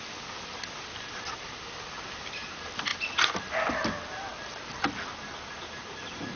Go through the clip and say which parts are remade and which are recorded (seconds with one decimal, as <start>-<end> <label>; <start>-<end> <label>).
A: 0.0-6.4 recorded